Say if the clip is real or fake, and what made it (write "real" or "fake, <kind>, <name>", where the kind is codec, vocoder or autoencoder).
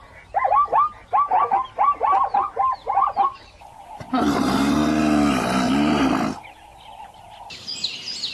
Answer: real